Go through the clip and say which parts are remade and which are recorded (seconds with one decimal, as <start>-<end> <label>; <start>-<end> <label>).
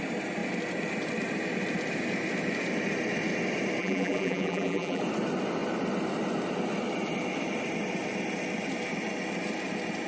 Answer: 0.0-3.8 recorded; 3.8-5.0 remade; 5.0-10.1 recorded